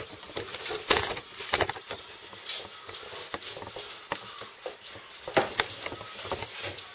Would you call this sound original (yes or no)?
yes